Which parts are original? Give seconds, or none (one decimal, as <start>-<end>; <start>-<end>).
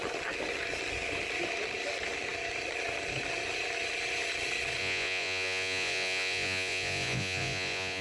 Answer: 0.0-4.8